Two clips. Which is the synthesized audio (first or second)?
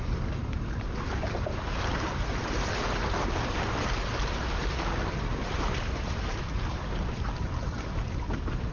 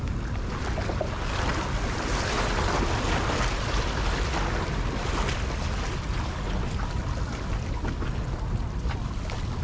first